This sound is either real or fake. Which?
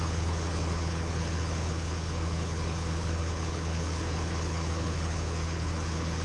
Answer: fake